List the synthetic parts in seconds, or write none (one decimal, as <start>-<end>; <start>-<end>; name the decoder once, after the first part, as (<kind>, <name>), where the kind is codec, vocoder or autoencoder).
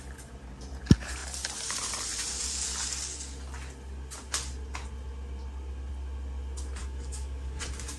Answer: 6.8-7.6 (codec, DAC)